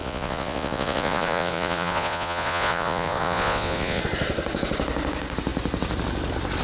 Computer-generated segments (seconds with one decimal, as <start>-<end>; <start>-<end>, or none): 0.0-4.0